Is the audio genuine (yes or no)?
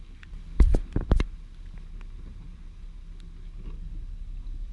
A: yes